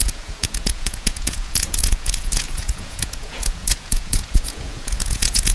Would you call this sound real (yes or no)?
no